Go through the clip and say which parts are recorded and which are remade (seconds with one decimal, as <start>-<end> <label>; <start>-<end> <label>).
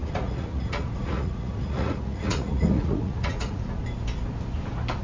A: 0.0-3.8 remade; 3.8-5.0 recorded